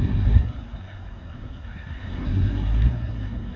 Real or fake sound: fake